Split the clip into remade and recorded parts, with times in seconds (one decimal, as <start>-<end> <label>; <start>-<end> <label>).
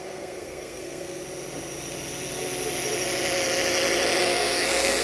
0.0-1.2 remade; 1.2-4.2 recorded; 4.2-5.0 remade